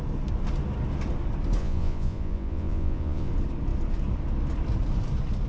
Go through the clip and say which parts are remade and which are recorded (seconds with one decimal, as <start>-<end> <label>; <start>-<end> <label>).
0.0-1.6 recorded; 1.6-3.3 remade; 3.3-5.5 recorded